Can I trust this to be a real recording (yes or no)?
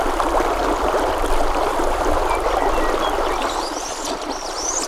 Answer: yes